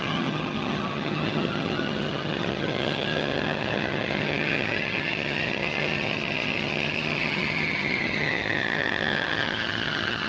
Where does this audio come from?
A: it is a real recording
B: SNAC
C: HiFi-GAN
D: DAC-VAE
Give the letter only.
C